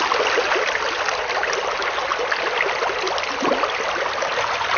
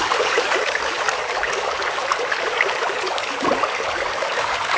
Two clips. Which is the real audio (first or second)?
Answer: first